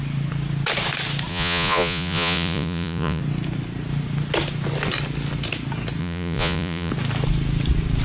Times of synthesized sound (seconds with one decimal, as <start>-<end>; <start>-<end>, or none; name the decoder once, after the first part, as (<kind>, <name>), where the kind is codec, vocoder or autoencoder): 1.3-3.2 (vocoder, Vocos); 6.0-6.9